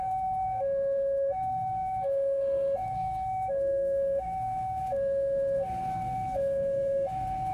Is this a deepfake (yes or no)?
yes